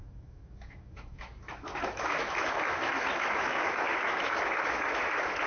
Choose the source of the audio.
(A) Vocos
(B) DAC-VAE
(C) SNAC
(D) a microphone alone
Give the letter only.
B